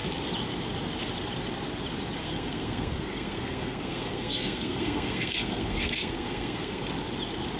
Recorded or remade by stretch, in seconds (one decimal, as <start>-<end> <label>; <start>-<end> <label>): 0.0-2.2 recorded; 2.2-6.8 remade; 6.8-7.6 recorded